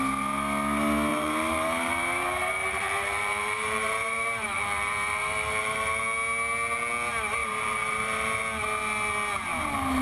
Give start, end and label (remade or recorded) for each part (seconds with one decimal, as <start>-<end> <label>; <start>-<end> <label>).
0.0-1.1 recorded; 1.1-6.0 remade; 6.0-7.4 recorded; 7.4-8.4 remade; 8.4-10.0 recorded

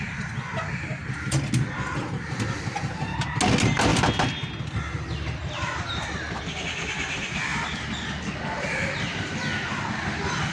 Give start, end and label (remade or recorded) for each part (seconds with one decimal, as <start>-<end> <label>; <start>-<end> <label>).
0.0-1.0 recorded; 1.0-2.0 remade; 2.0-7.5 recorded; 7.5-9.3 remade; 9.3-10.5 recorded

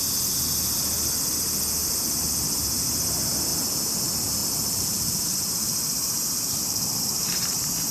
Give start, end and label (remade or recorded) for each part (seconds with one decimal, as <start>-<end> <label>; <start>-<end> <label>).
0.0-1.8 recorded; 1.8-2.3 remade; 2.3-4.4 recorded; 4.4-7.9 remade

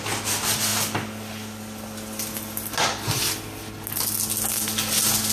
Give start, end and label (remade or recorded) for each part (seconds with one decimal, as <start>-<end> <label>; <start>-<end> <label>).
0.0-5.3 recorded

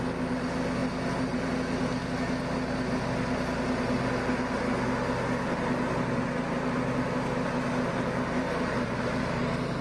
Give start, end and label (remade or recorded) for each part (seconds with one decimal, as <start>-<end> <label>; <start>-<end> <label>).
0.0-0.8 recorded; 0.8-1.5 remade; 1.5-7.9 recorded; 7.9-9.4 remade; 9.4-9.8 recorded